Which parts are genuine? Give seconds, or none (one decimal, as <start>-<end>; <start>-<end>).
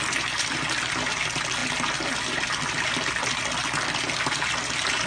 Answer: 0.0-5.1